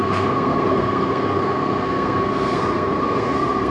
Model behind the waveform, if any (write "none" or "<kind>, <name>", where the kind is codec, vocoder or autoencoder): codec, SNAC